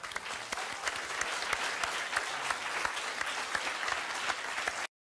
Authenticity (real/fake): real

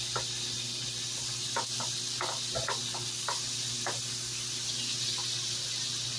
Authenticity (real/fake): real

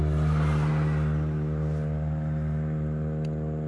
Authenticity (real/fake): real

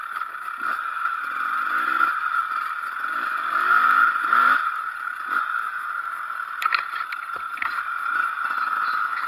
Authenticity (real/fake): real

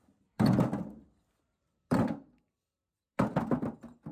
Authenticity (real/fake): fake